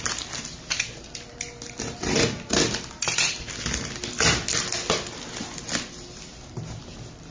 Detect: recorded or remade recorded